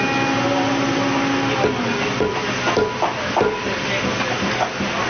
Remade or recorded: recorded